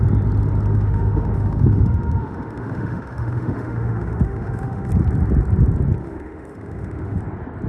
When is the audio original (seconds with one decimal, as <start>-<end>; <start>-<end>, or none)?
0.0-0.7; 4.9-6.0; 7.2-7.7